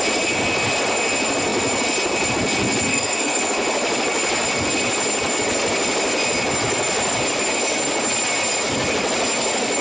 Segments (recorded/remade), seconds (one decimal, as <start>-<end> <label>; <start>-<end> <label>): 0.0-2.9 recorded; 2.9-3.4 remade; 3.4-9.8 recorded